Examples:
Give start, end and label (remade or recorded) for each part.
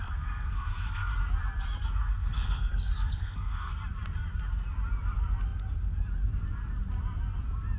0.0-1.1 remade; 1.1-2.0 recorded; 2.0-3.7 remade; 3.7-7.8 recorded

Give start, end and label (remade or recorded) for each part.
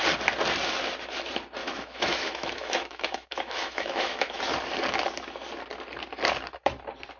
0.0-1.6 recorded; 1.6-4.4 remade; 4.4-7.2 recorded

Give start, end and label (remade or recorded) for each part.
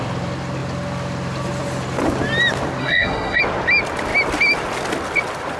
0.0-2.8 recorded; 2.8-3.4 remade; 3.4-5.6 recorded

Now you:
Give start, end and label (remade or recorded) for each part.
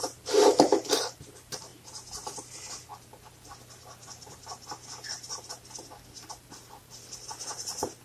0.0-1.7 remade; 1.7-6.3 recorded; 6.3-8.0 remade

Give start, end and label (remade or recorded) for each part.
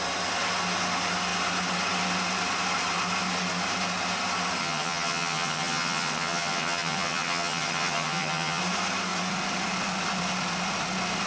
0.0-4.6 recorded; 4.6-8.6 remade; 8.6-11.3 recorded